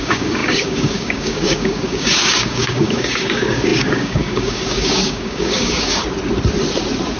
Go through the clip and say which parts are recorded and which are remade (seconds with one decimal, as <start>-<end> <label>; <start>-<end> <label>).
0.0-6.0 remade; 6.0-7.2 recorded